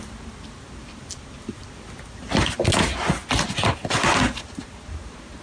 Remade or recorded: recorded